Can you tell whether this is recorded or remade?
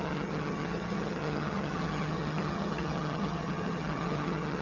remade